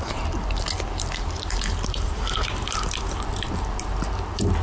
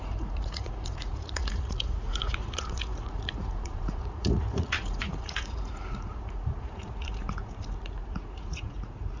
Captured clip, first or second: first